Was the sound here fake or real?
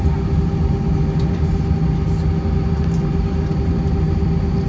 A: real